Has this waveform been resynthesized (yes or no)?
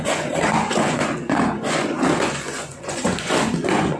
yes